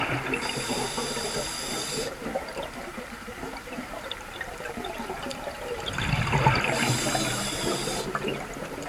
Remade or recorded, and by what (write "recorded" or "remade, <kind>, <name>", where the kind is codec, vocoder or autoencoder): remade, vocoder, BigVGAN v2